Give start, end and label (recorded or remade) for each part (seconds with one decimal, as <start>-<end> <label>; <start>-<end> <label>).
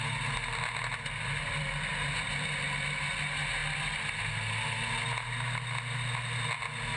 0.0-7.0 recorded